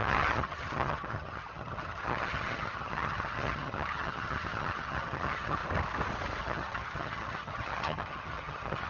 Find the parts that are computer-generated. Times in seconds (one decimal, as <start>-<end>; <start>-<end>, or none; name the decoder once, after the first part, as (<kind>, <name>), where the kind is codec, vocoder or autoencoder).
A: 0.0-5.6 (vocoder, HiFi-GAN); 6.4-8.9